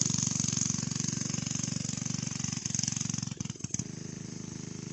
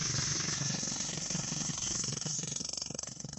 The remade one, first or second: second